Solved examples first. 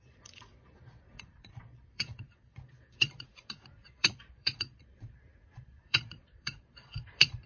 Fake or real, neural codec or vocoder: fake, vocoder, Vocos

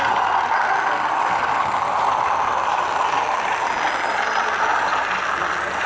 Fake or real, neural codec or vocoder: real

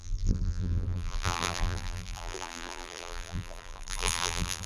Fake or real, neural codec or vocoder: fake, vocoder, BigVGAN v2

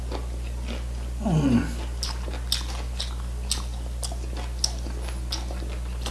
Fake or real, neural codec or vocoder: real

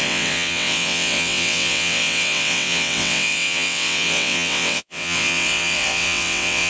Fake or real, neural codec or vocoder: fake, vocoder, WaveNeXt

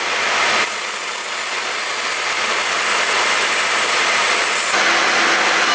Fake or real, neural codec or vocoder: real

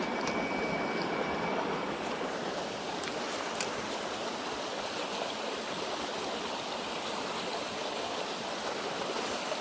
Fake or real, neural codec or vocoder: real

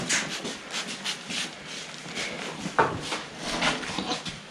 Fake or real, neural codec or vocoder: real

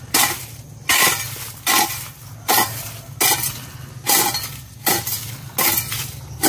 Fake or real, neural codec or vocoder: real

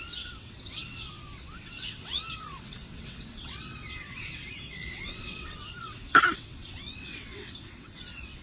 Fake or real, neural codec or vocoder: fake, vocoder, WaveNeXt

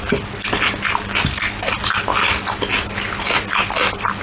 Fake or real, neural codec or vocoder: real